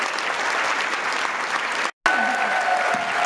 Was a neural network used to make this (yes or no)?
no